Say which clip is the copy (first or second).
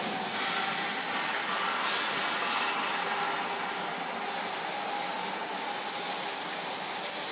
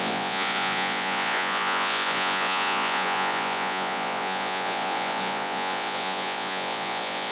second